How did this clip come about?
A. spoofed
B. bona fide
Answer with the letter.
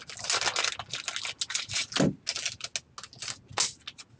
B